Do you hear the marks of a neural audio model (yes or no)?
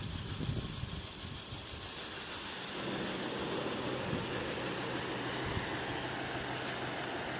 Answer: no